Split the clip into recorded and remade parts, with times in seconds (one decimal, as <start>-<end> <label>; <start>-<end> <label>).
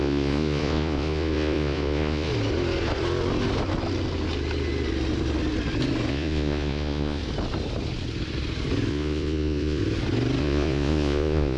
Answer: 0.0-2.3 remade; 2.3-6.1 recorded; 6.1-7.2 remade; 7.2-8.9 recorded; 8.9-9.8 remade; 9.8-10.4 recorded; 10.4-11.6 remade